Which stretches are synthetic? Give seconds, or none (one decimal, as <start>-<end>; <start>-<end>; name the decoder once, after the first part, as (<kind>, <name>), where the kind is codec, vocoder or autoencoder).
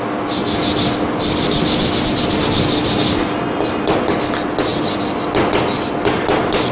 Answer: none